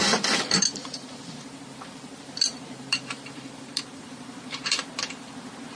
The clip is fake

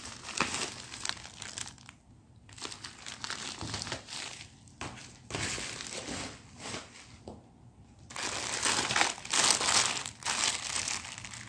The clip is real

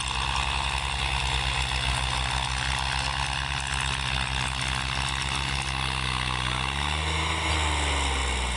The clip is real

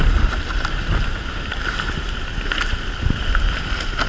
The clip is real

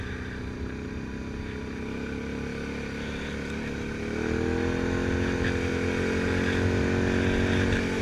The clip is real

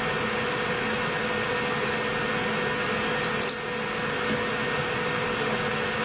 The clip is real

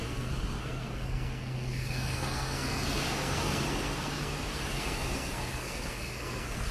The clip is fake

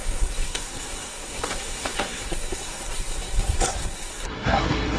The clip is fake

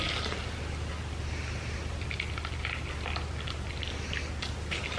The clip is real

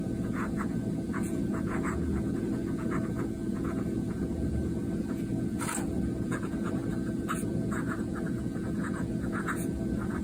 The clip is fake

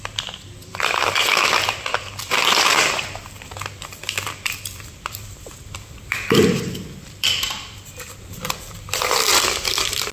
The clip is fake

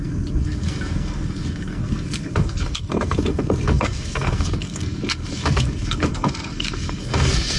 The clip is fake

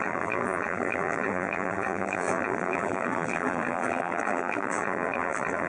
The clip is fake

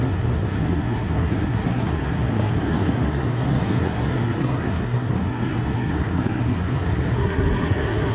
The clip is fake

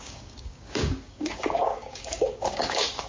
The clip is fake